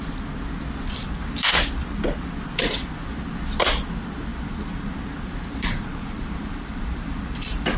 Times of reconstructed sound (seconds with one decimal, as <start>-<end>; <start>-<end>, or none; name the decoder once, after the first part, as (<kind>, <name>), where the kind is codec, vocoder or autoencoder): 1.0-1.5 (vocoder, BigVGAN v2); 4.3-7.8